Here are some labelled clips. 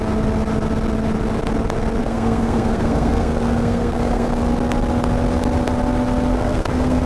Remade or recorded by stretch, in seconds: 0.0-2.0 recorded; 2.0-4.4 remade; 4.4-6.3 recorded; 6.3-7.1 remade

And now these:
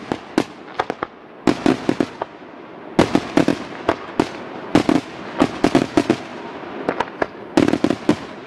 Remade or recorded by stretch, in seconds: 0.0-8.5 recorded

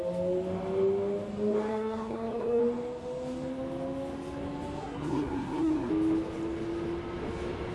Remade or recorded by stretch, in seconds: 0.0-1.7 recorded; 1.7-2.6 remade; 2.6-4.8 recorded; 4.8-5.9 remade; 5.9-7.7 recorded

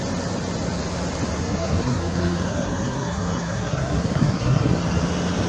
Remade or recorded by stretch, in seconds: 0.0-1.4 recorded; 1.4-4.7 remade; 4.7-5.5 recorded

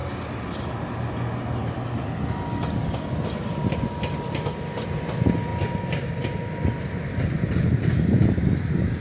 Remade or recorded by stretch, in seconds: 0.0-9.0 recorded